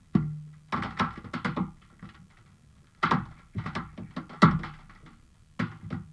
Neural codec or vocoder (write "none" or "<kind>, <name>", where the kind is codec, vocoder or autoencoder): none